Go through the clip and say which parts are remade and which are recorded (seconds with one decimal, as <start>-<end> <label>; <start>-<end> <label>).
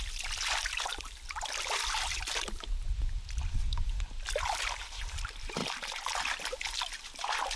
0.0-7.6 recorded